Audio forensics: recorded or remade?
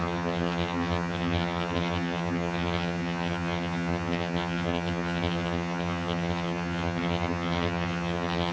remade